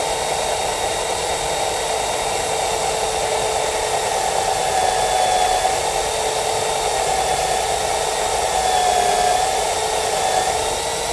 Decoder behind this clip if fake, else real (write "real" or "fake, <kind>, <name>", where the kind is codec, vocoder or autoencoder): real